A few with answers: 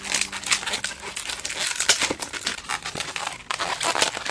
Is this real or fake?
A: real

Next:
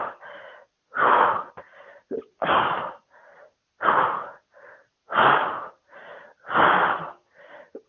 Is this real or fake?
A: real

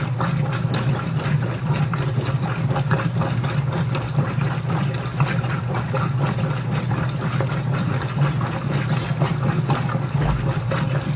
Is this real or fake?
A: real